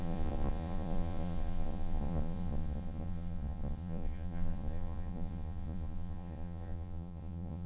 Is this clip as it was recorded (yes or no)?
no